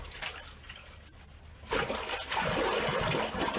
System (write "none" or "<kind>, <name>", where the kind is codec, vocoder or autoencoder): none